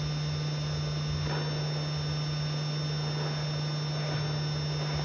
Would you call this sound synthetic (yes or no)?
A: no